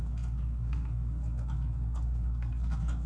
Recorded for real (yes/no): no